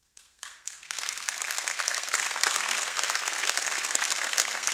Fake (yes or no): yes